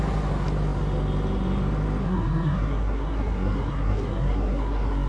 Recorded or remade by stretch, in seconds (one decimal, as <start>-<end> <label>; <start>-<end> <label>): 0.0-2.0 recorded; 2.0-5.1 remade

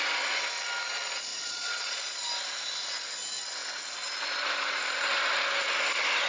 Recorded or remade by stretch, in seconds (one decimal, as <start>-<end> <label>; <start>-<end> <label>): 0.0-1.3 recorded; 1.3-2.3 remade; 2.3-6.3 recorded

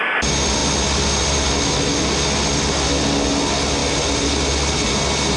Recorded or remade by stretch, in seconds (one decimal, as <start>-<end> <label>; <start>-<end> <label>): 0.0-5.4 recorded

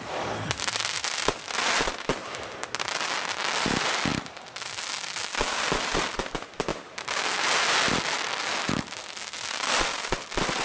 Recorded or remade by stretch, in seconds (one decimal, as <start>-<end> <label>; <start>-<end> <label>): 0.0-10.6 recorded

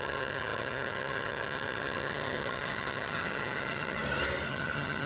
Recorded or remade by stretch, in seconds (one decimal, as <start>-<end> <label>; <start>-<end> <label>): 0.0-4.0 remade; 4.0-4.5 recorded; 4.5-5.1 remade

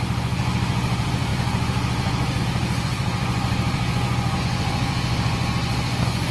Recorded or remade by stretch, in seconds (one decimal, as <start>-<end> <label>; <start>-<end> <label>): 0.0-6.3 remade

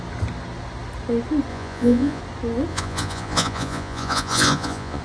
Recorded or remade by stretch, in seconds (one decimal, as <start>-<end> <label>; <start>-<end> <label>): 0.0-1.5 recorded; 1.5-2.2 remade; 2.2-2.7 recorded; 2.7-5.0 remade